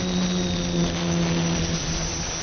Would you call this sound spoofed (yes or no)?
no